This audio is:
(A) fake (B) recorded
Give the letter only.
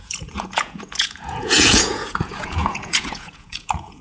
A